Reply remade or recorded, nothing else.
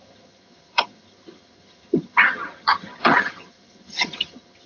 remade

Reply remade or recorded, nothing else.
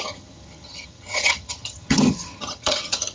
remade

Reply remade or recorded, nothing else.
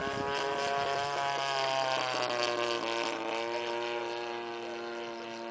recorded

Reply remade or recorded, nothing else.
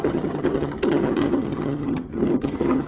remade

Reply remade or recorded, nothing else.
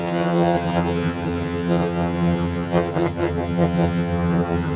remade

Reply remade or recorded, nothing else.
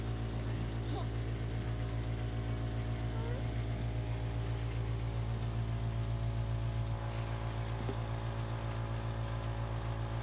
recorded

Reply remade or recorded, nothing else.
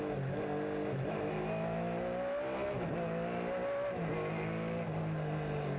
recorded